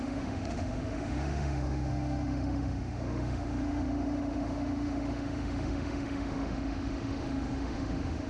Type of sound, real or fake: fake